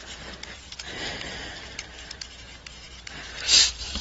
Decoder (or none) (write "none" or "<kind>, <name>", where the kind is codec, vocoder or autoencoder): vocoder, BigVGAN v2